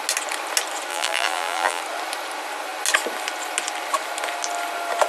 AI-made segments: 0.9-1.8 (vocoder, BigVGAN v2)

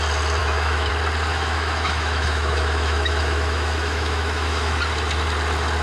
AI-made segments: 0.4-0.9 (autoencoder, DAC-VAE); 1.3-4.8

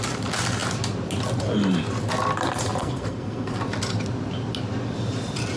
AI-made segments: 2.8-3.6 (codec, SNAC)

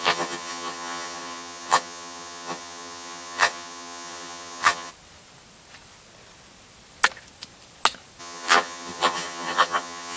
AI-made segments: 0.0-4.9 (vocoder, HiFi-GAN); 8.2-10.2

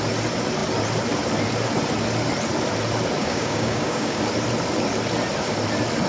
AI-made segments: 3.2-4.2 (codec, DAC)

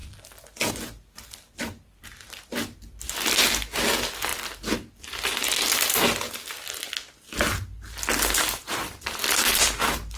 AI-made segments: 0.0-3.1 (vocoder, BigVGAN v2); 8.6-10.2